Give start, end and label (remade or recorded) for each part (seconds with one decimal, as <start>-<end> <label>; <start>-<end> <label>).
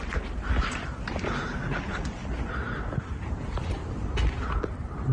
0.0-2.2 remade; 2.2-3.0 recorded; 3.0-3.8 remade; 3.8-4.6 recorded; 4.6-5.1 remade